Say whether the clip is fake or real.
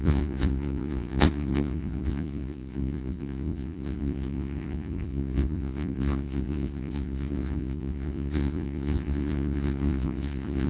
fake